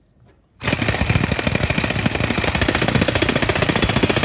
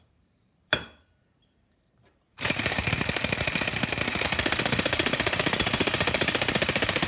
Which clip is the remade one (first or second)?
second